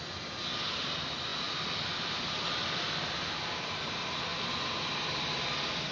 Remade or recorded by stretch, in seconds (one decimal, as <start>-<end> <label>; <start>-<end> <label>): 0.0-5.9 recorded